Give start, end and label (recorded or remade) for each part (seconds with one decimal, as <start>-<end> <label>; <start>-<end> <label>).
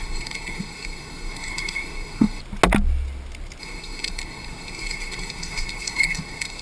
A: 0.0-2.4 remade; 2.4-3.6 recorded; 3.6-6.6 remade